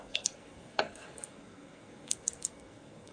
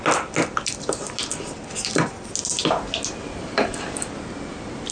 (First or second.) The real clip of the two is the second